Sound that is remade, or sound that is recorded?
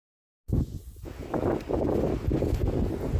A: recorded